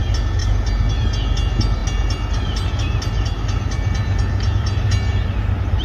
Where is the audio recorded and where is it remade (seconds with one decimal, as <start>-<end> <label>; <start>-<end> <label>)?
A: 0.0-5.8 recorded